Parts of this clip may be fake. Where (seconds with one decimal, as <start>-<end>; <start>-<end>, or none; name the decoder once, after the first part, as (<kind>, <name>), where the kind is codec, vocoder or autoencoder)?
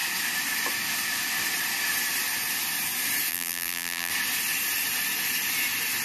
3.3-4.1 (vocoder, BigVGAN v2)